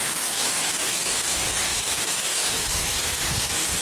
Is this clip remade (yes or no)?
yes